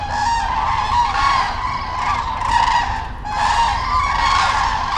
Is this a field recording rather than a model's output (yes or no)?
yes